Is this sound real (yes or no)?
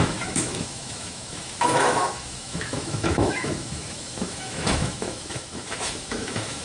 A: no